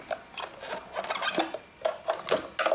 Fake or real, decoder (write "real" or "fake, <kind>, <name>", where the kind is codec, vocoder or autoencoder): real